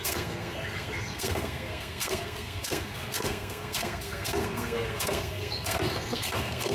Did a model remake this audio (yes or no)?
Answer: yes